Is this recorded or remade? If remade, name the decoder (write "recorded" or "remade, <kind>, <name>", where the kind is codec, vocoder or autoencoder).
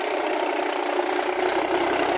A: recorded